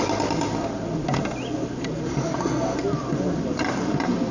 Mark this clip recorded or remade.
recorded